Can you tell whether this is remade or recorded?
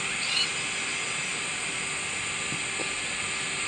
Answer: recorded